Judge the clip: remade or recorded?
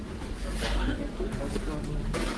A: recorded